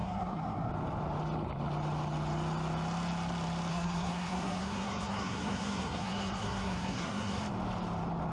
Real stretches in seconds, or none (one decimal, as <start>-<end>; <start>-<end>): 0.7-3.7; 7.4-8.3